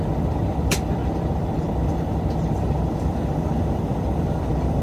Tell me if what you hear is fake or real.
fake